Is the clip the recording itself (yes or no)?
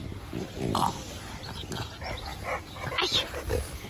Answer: yes